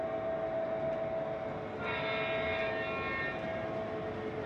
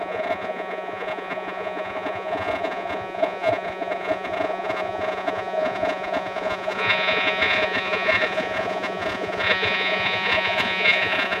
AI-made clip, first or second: second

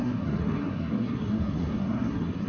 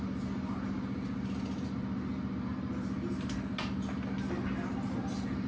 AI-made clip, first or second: first